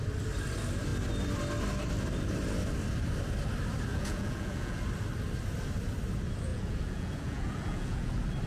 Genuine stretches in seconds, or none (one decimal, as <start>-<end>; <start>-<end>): 0.0-3.9; 4.8-6.5; 8.1-8.5